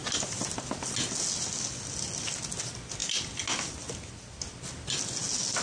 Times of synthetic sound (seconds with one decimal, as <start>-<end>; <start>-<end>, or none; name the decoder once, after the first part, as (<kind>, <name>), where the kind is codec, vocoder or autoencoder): none

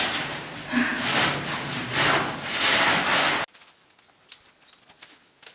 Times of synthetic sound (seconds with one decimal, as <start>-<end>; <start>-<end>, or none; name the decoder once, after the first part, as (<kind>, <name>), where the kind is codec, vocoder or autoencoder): none

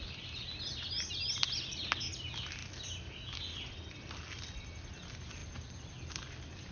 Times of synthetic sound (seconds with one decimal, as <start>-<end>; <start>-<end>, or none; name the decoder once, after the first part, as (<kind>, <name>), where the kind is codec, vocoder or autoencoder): none

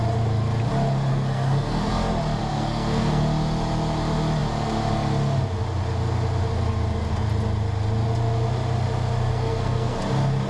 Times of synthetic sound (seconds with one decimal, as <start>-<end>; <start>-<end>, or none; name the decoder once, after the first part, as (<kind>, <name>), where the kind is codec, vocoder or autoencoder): 1.1-1.9 (codec, SNAC); 2.5-3.2; 9.3-10.0

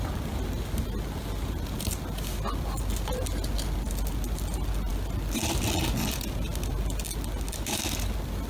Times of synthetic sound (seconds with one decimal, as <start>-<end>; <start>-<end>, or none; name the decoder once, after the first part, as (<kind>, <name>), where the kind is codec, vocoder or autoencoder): none